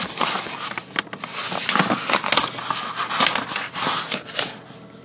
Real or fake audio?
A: real